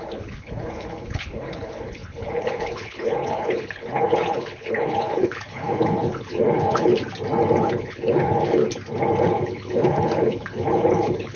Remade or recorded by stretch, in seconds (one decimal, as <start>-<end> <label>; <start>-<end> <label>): 0.0-6.9 remade; 6.9-7.6 recorded; 7.6-8.6 remade; 8.6-9.2 recorded; 9.2-11.4 remade